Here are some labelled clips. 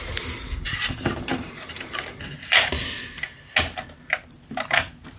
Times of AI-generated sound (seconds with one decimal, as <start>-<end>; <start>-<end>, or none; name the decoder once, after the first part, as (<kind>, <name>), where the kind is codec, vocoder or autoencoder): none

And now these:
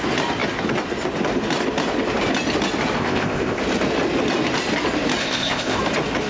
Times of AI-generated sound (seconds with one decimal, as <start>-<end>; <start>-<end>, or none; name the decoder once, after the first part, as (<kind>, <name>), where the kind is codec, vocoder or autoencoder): 3.0-3.6 (codec, ZipCodec); 5.2-5.8

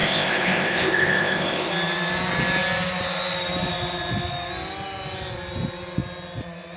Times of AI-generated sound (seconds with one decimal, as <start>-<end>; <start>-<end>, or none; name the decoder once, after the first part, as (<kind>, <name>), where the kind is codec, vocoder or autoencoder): 0.0-1.7 (codec, ZipCodec)

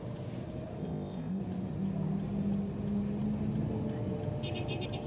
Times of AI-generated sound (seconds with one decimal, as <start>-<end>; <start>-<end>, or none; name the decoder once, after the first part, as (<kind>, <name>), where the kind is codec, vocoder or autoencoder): 0.8-1.4 (codec, ZipCodec)

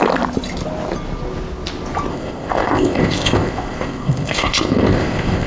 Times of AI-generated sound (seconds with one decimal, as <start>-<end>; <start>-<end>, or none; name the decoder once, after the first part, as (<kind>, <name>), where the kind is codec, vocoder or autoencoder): 2.1-5.5 (codec, ZipCodec)